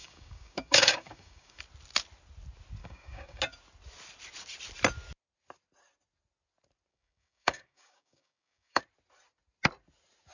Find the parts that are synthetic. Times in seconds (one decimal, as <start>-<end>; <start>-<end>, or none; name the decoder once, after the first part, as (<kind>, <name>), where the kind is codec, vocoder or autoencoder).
0.0-1.6 (codec, DAC); 2.8-3.4; 6.9-8.8